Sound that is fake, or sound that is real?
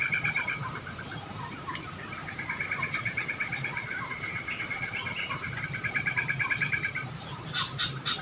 fake